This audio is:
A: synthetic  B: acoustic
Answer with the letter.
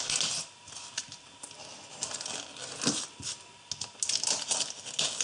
B